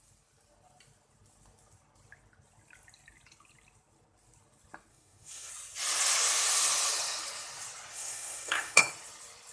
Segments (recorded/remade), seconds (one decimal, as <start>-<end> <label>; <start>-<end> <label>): 0.0-4.9 recorded; 4.9-5.5 remade; 5.5-7.9 recorded; 7.9-8.8 remade; 8.8-9.5 recorded